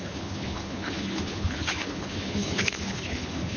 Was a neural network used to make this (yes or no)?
yes